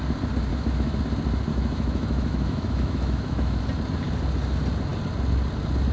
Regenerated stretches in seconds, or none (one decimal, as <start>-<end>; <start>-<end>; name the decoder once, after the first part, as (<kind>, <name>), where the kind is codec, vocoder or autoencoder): 0.5-1.0 (autoencoder, DAC-VAE); 1.5-3.6